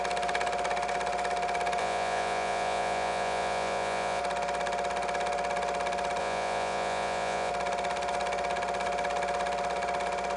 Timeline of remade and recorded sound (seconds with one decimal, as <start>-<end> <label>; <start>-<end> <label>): 0.0-1.8 recorded; 1.8-4.2 remade; 4.2-6.2 recorded; 6.2-7.5 remade; 7.5-10.4 recorded